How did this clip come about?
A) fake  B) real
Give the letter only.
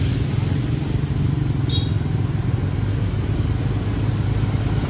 B